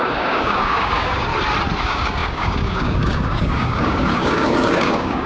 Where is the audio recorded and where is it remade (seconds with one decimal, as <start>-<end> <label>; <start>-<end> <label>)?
0.0-1.3 remade; 1.3-1.8 recorded; 1.8-5.3 remade